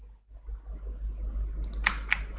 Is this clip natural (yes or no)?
yes